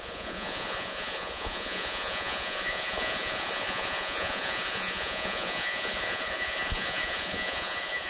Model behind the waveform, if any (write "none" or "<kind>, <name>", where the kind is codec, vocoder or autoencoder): vocoder, Vocos